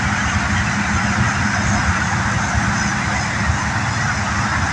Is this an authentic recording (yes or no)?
yes